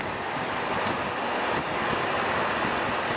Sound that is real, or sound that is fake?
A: real